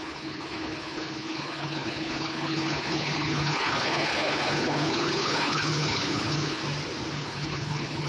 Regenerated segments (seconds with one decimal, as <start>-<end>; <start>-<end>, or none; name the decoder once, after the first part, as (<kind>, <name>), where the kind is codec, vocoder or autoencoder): 0.0-6.6 (codec, HILCodec); 7.1-8.1